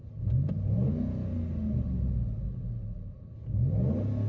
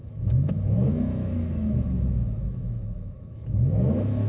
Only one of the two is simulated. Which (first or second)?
second